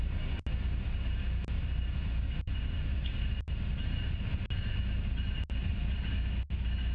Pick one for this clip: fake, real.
real